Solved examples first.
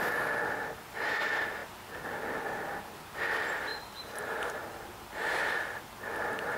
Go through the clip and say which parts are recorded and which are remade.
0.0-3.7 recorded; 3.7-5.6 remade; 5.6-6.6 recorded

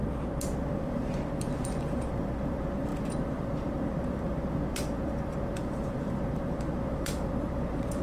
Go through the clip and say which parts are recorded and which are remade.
0.0-8.0 remade